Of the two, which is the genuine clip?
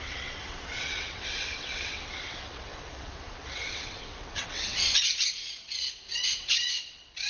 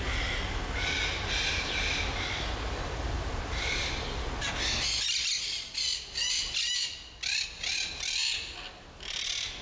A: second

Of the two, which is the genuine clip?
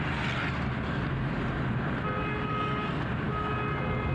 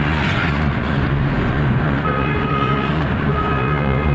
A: first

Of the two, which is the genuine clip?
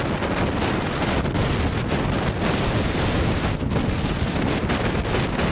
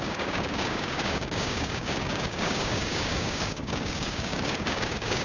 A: first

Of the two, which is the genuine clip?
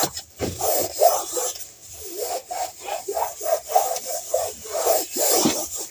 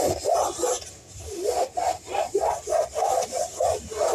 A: second